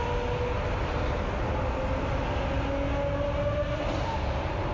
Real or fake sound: real